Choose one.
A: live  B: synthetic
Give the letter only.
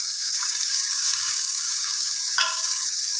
B